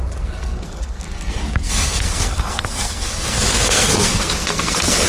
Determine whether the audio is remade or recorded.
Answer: remade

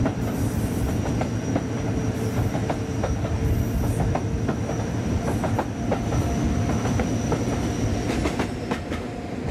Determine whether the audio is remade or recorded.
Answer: recorded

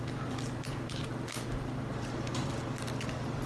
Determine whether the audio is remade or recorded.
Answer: recorded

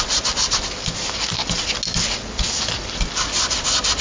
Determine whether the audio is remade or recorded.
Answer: recorded